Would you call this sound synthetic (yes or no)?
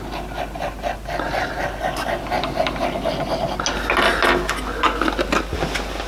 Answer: no